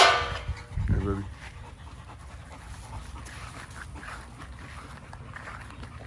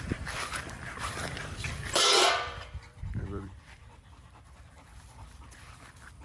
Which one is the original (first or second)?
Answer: first